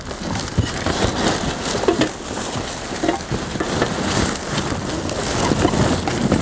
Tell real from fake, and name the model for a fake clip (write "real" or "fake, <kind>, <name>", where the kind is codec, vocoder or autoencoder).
real